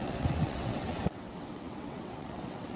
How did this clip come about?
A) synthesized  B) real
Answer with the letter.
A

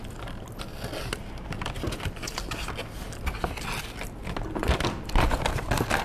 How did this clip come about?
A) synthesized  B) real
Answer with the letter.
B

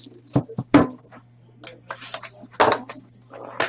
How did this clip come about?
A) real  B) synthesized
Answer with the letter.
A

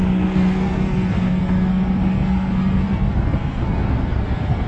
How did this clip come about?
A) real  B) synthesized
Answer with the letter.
B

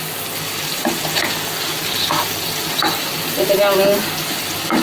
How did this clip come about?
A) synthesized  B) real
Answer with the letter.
B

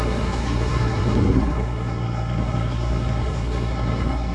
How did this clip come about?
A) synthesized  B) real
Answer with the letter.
A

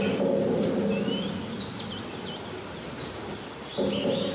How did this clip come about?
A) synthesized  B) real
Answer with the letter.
B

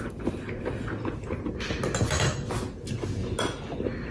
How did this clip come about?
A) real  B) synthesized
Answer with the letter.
A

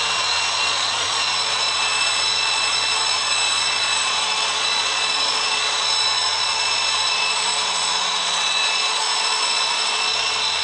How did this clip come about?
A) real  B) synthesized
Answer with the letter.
B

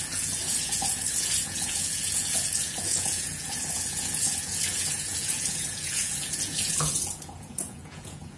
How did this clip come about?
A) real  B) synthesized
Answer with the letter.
B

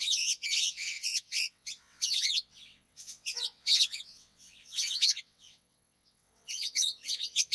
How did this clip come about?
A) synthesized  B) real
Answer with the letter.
A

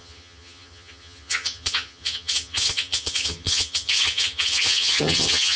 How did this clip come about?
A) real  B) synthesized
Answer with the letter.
B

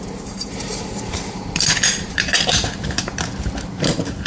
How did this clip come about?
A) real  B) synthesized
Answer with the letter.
B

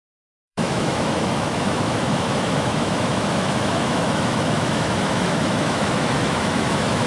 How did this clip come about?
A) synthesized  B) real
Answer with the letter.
A